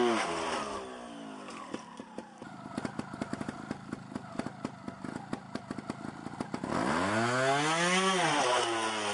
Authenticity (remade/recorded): recorded